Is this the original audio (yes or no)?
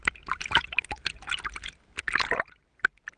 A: yes